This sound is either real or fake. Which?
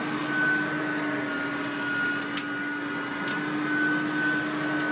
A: real